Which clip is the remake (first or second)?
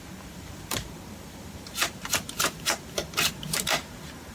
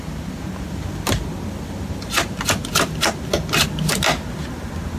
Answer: first